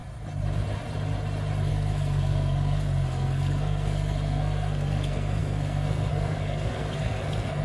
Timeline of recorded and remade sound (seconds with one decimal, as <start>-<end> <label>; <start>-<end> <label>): 0.0-1.7 recorded; 1.7-7.6 remade